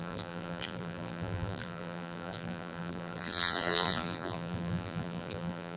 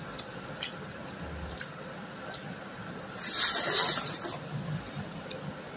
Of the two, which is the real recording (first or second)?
second